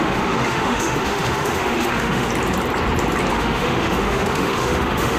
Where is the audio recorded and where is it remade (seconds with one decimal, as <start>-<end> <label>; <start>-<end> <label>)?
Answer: 0.0-2.3 remade; 2.3-3.3 recorded; 3.3-5.2 remade